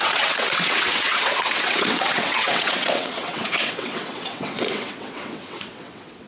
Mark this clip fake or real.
fake